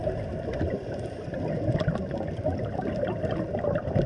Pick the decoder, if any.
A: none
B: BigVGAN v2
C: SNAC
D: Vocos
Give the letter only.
B